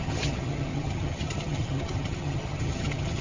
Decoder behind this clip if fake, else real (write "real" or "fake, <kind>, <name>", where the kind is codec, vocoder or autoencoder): fake, vocoder, HiFi-GAN